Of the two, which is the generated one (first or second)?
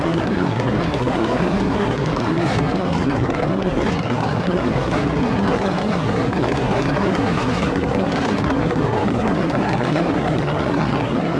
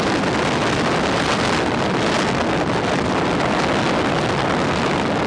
first